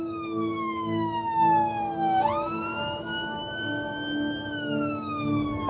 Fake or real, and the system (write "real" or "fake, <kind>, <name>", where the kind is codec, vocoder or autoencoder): fake, autoencoder, DAC-VAE